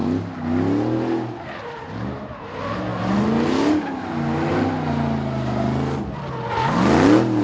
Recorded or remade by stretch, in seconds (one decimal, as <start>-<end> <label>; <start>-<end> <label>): 0.0-7.4 recorded